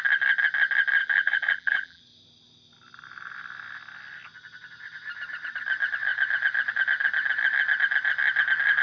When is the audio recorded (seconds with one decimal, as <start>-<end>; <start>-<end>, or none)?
0.0-1.0; 2.0-8.8